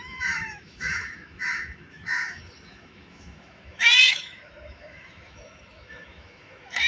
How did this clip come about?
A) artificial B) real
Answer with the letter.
A